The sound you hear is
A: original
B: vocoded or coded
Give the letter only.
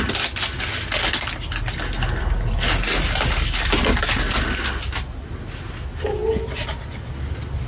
A